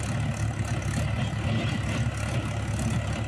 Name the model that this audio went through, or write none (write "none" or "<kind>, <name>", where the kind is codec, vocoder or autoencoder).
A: none